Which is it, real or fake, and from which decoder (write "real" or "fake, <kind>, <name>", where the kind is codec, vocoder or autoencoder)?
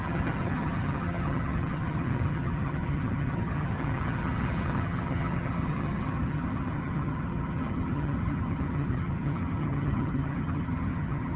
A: fake, vocoder, HiFi-GAN